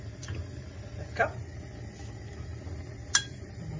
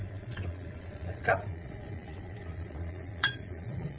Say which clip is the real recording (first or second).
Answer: first